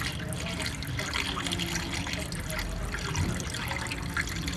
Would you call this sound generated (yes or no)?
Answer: no